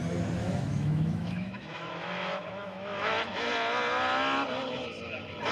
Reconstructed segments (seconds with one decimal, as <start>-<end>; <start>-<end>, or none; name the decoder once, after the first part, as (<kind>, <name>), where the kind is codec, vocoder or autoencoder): 0.4-3.1 (autoencoder, DAC-VAE)